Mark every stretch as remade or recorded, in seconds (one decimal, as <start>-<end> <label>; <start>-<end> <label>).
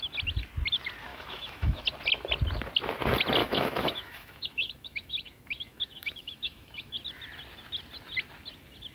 0.0-1.1 recorded; 1.1-1.8 remade; 1.8-3.4 recorded; 3.4-6.9 remade; 6.9-8.9 recorded